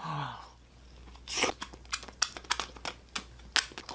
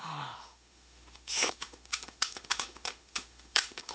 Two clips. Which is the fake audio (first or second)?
second